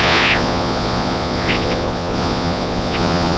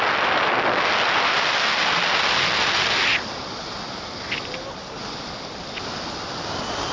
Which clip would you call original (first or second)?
second